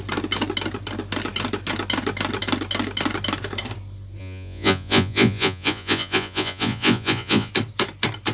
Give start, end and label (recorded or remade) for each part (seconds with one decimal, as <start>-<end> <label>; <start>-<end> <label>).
0.0-4.2 recorded; 4.2-7.5 remade; 7.5-8.3 recorded